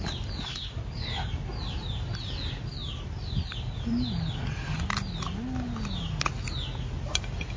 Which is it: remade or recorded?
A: recorded